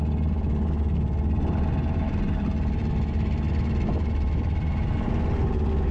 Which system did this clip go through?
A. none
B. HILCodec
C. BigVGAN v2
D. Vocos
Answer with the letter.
A